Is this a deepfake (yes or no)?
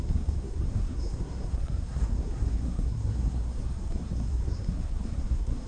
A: yes